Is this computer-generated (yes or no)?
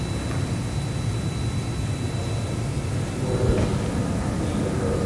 no